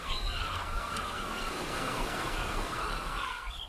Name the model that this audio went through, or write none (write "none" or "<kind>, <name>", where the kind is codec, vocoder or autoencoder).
codec, SNAC